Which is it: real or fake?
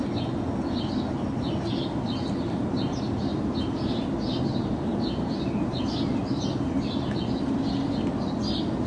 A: real